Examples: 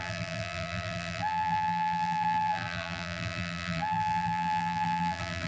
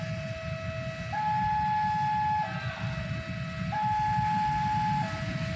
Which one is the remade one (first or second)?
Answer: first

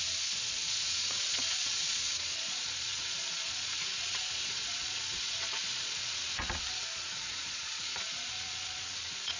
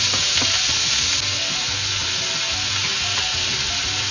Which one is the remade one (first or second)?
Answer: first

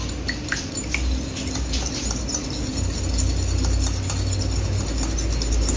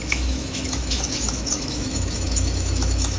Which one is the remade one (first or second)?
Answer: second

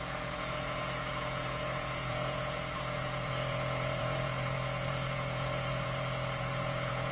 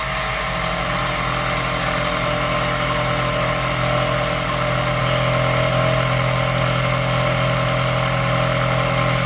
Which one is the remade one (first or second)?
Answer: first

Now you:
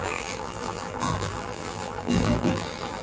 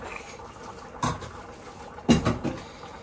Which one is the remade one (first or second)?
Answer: first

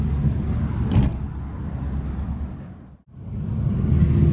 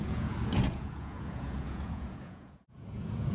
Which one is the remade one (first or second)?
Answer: second